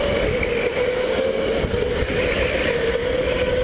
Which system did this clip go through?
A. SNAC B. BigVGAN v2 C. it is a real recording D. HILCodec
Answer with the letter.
C